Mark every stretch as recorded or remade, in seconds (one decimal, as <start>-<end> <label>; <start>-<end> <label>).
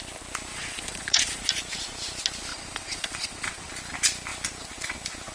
0.0-0.5 recorded; 0.5-1.4 remade; 1.4-2.5 recorded; 2.5-3.7 remade; 3.7-5.3 recorded